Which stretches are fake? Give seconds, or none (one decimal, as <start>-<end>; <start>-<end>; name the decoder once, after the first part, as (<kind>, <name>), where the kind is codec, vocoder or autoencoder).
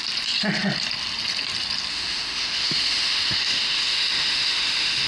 1.9-5.1 (autoencoder, DAC-VAE)